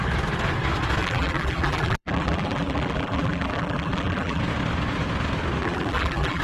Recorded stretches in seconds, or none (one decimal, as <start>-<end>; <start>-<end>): 0.0-1.0; 4.4-5.6